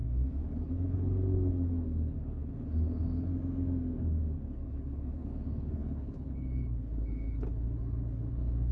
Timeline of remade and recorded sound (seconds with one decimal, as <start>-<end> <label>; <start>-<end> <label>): 0.0-3.3 remade; 3.3-4.0 recorded; 4.0-8.7 remade